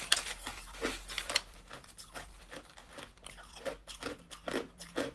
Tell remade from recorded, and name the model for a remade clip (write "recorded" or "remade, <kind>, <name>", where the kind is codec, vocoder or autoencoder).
recorded